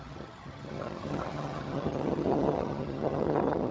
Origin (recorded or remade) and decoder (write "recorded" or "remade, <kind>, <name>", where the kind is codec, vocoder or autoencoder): remade, vocoder, HiFi-GAN